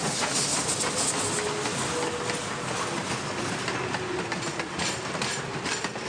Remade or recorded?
recorded